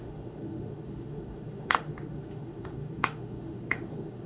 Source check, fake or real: fake